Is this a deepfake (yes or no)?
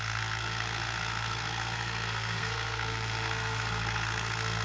yes